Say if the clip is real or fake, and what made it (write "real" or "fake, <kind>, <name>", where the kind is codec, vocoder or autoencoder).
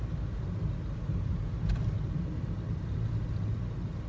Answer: real